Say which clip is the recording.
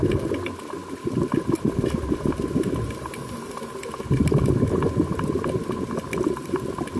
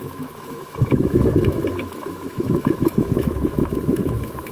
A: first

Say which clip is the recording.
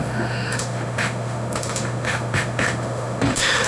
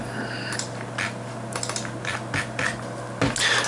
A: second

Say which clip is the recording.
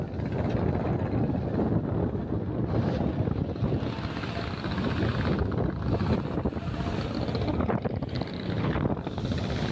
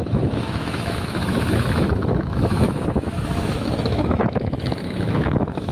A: first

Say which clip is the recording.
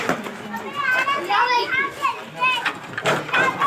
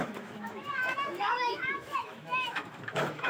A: first